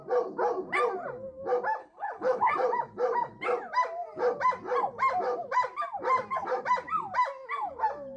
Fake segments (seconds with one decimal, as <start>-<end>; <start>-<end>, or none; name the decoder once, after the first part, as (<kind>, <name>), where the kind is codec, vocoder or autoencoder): 1.8-2.5 (codec, HILCodec)